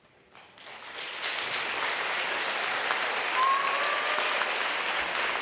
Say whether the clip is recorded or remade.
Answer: recorded